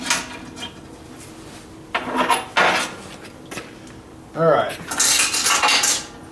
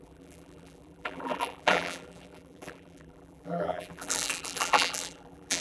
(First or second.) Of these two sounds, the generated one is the second